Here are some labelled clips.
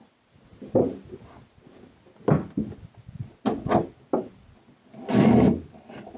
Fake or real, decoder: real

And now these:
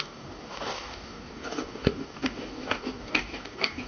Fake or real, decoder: fake, codec, DAC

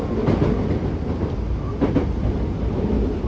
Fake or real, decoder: real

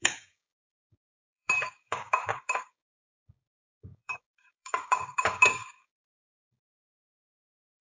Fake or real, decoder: fake, codec, DAC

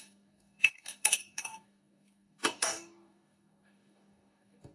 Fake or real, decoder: fake, codec, DAC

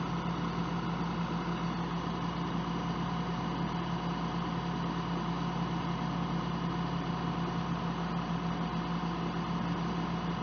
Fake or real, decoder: real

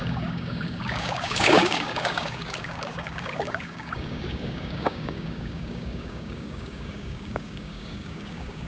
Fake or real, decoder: fake, codec, DAC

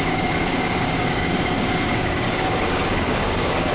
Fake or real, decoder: fake, codec, DAC